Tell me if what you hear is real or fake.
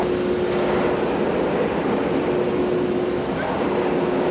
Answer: real